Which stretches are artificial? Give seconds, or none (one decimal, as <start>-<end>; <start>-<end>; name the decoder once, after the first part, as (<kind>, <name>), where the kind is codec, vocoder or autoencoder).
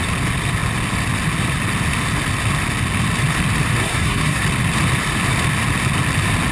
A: 3.8-4.4 (codec, SNAC)